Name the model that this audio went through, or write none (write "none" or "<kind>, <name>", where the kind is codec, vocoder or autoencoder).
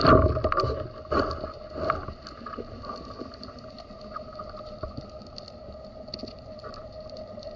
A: none